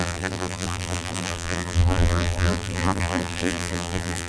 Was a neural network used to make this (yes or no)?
yes